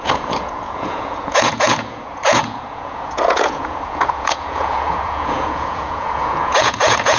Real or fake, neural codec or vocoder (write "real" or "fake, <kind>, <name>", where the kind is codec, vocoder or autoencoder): fake, vocoder, Vocos